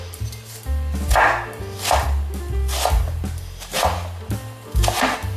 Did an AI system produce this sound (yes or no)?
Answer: no